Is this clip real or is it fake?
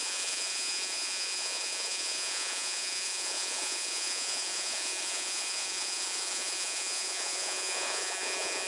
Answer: fake